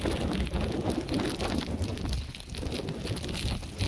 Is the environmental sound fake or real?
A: real